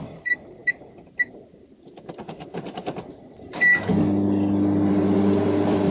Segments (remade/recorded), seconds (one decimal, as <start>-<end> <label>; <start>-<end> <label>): 0.0-0.6 remade; 0.6-2.2 recorded; 2.2-3.7 remade; 3.7-4.9 recorded; 4.9-5.9 remade